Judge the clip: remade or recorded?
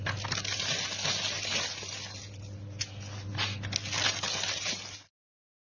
recorded